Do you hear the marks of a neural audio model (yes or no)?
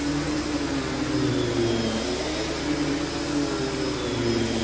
no